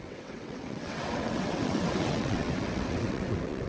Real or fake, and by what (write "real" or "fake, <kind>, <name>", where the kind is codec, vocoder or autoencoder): fake, vocoder, WaveNeXt